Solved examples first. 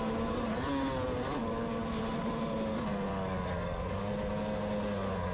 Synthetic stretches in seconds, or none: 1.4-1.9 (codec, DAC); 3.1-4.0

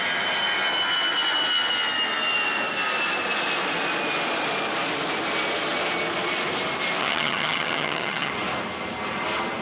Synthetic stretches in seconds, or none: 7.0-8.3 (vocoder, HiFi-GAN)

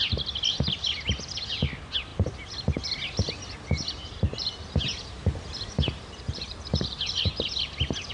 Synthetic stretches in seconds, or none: none

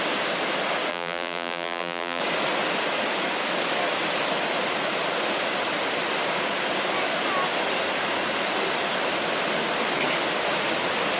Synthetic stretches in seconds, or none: 0.9-2.2 (vocoder, BigVGAN v2)